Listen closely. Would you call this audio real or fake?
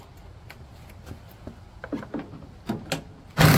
real